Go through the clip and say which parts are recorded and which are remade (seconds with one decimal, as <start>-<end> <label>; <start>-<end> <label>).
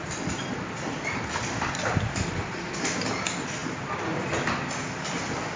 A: 0.0-5.6 recorded